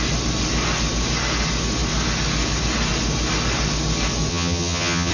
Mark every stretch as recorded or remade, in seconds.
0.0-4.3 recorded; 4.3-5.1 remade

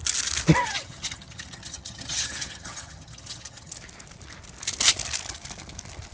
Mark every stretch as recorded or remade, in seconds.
0.0-0.6 recorded; 0.6-3.7 remade; 3.7-6.1 recorded

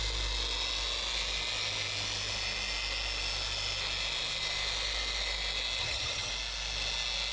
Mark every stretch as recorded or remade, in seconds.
0.0-5.8 recorded; 5.8-6.3 remade; 6.3-7.3 recorded

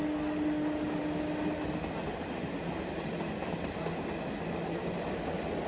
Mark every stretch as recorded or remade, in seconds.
0.0-5.7 recorded

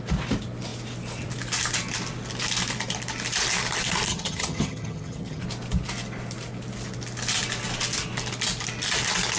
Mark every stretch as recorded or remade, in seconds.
0.0-4.1 recorded; 4.1-5.4 remade; 5.4-9.4 recorded

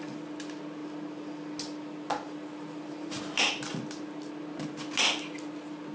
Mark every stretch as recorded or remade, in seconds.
0.0-5.9 recorded